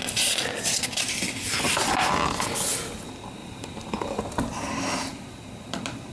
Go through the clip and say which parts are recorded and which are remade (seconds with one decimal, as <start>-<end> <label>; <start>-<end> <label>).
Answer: 0.0-3.4 recorded; 3.4-4.2 remade; 4.2-6.1 recorded